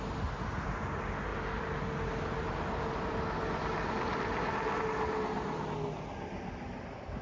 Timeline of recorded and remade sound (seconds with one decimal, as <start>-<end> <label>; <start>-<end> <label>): 0.0-7.2 recorded